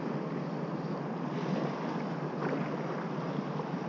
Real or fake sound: real